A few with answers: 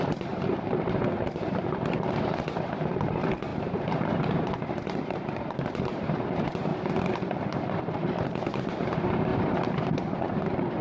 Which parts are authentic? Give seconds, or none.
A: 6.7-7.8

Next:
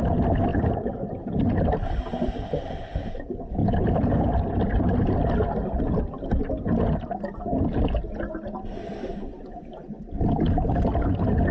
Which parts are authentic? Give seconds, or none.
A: 0.0-0.5; 2.3-11.5